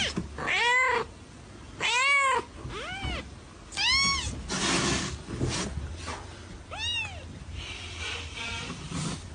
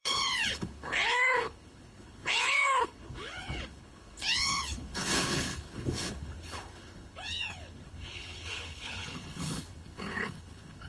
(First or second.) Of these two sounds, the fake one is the second